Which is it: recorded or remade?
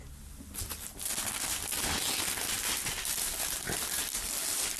recorded